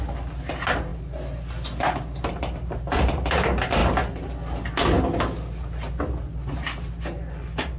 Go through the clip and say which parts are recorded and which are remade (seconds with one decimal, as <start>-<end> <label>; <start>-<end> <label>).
0.0-7.8 recorded